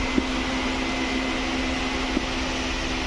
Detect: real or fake real